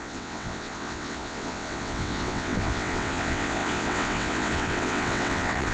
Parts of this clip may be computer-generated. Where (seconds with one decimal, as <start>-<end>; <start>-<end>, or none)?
0.0-5.7